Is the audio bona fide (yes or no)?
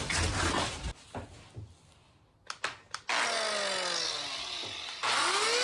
yes